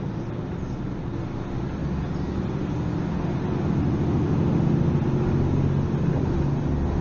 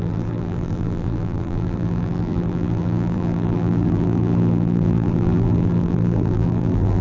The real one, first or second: first